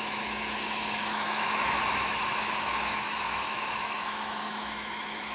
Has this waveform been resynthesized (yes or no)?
yes